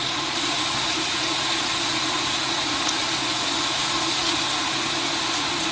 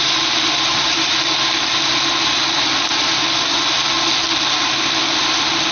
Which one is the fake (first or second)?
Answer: first